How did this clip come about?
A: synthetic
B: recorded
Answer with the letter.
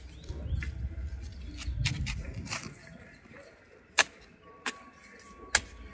B